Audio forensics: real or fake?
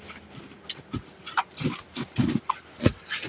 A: real